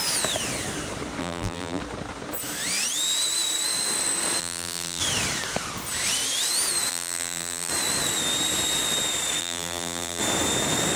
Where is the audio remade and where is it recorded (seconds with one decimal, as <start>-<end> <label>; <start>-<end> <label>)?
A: 0.0-1.2 recorded; 1.2-1.8 remade; 1.8-4.4 recorded; 4.4-5.0 remade; 5.0-6.9 recorded; 6.9-7.7 remade; 7.7-9.4 recorded; 9.4-10.2 remade; 10.2-11.0 recorded